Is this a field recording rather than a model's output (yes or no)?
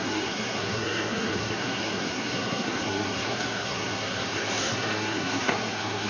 no